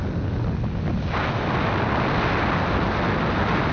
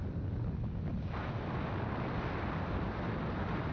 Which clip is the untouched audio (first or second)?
first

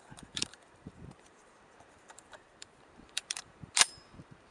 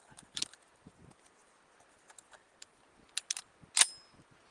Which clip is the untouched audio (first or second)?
second